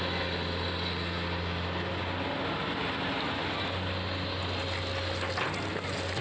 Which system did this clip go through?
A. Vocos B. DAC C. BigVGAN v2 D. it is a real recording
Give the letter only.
D